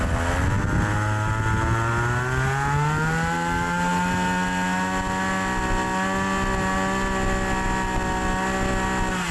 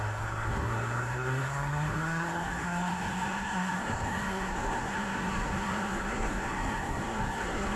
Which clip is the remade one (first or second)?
second